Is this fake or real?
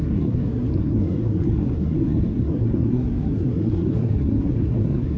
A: fake